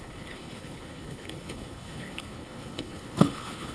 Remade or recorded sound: remade